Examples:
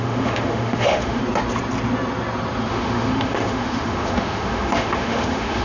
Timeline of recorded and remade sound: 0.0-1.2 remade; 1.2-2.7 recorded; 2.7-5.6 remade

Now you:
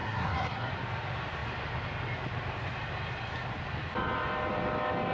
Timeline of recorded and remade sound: 0.0-0.7 remade; 0.7-5.1 recorded